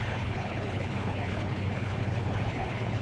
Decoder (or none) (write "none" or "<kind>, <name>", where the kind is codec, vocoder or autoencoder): codec, HILCodec